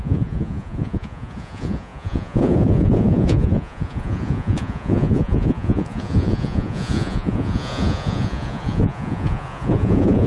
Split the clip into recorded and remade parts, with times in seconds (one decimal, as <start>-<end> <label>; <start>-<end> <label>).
0.0-10.3 remade

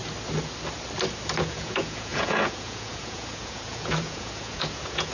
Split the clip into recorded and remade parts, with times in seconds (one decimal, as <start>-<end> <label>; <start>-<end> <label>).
0.0-1.4 recorded; 1.4-5.1 remade

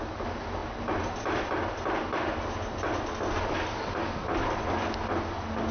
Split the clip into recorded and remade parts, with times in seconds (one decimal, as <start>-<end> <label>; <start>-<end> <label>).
0.0-5.7 recorded

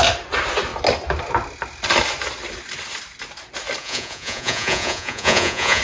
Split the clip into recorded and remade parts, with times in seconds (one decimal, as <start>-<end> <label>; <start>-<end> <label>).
0.0-3.8 recorded; 3.8-5.8 remade

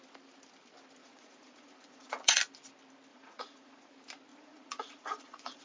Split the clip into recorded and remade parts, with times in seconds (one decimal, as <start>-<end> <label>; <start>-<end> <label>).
0.0-1.0 recorded; 1.0-2.4 remade; 2.4-3.1 recorded; 3.1-3.9 remade; 3.9-4.3 recorded; 4.3-5.6 remade

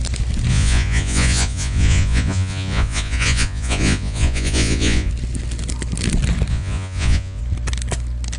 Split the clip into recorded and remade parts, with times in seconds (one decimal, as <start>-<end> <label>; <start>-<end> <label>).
0.0-0.5 recorded; 0.5-5.1 remade; 5.1-6.5 recorded; 6.5-7.4 remade; 7.4-8.4 recorded